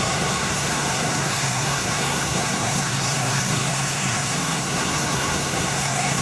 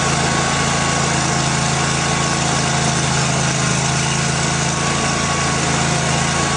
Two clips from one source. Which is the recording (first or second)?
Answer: second